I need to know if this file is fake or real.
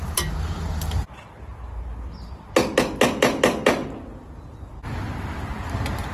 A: real